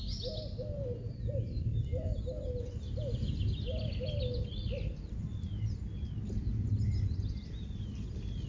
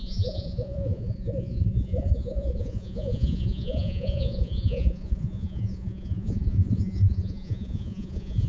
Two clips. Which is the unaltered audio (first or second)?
first